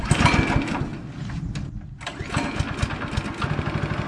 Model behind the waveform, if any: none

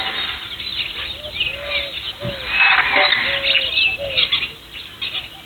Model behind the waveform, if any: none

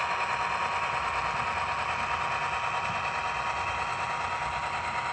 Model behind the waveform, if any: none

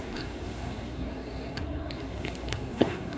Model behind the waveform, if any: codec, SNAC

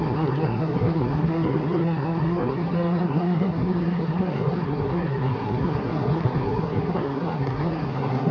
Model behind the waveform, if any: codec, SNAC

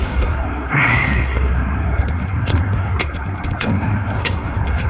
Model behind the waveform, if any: codec, SNAC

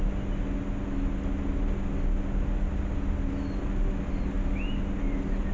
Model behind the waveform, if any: none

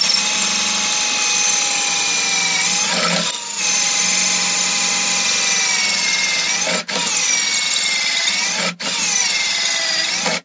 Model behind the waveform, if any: none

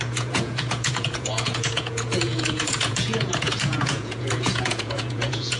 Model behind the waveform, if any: vocoder, Vocos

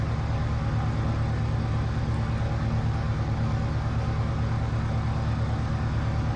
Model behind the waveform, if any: none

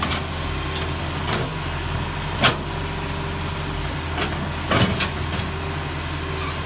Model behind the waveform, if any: none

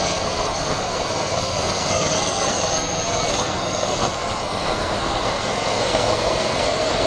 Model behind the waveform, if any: codec, SNAC